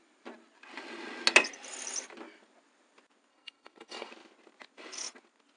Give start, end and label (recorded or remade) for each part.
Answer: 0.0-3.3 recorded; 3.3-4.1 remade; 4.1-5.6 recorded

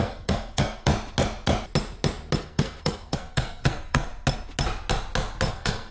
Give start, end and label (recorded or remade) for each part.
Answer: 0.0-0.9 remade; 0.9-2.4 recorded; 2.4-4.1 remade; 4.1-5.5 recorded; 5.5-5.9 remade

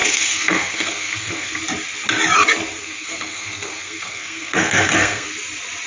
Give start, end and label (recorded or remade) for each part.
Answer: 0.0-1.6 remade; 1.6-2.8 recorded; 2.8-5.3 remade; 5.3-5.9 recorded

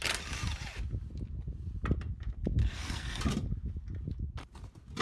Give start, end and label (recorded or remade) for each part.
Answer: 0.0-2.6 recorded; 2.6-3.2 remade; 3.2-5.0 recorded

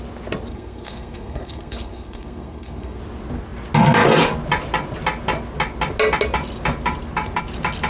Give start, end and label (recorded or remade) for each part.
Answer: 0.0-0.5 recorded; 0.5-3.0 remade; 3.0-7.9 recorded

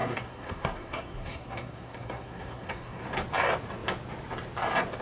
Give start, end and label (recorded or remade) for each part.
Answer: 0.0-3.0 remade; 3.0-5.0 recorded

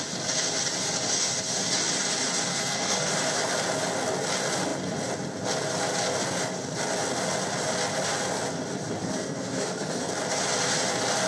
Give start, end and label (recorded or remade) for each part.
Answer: 0.0-2.5 recorded; 2.5-3.1 remade; 3.1-9.0 recorded; 9.0-10.1 remade; 10.1-11.3 recorded

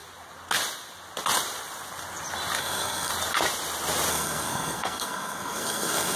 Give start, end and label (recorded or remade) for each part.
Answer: 0.0-2.6 recorded; 2.6-3.1 remade; 3.1-4.1 recorded; 4.1-6.2 remade